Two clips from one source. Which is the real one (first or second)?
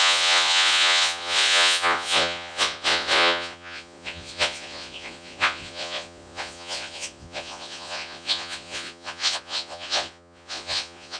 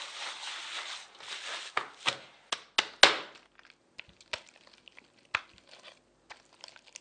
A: second